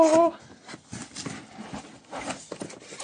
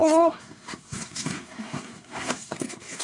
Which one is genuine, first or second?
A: first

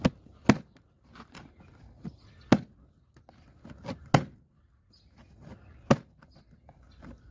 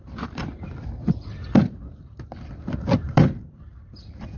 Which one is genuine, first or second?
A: first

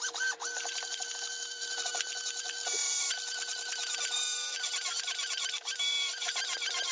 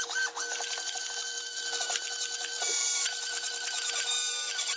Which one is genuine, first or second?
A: second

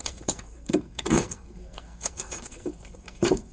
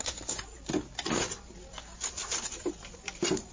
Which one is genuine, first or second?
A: second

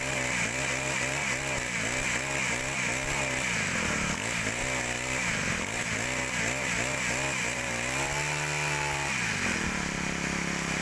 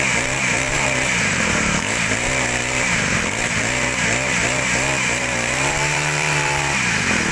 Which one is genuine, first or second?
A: first